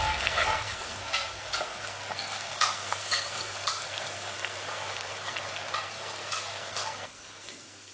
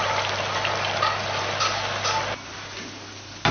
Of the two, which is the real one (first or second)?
second